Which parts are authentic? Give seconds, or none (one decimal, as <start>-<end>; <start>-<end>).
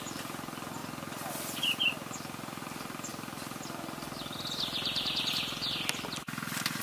0.0-6.8